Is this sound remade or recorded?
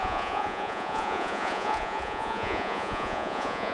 remade